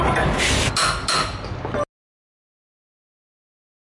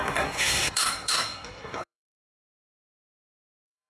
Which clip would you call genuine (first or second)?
first